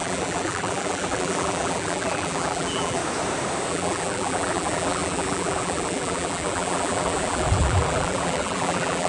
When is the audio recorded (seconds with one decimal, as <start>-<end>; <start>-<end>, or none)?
3.0-3.7